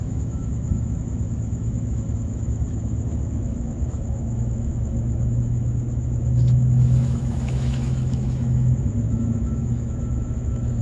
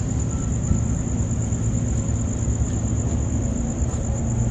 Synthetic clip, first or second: first